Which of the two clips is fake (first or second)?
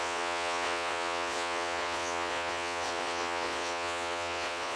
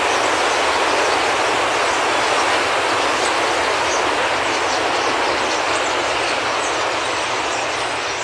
first